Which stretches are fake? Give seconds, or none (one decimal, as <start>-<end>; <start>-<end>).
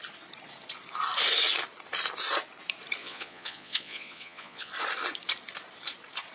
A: 3.0-4.7